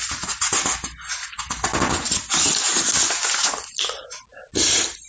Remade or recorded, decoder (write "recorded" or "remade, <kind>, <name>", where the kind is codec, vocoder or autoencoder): recorded